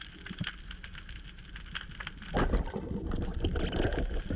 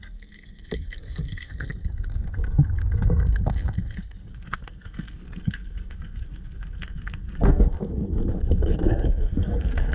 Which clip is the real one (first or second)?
first